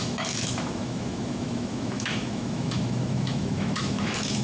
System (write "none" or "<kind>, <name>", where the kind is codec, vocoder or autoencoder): autoencoder, DAC-VAE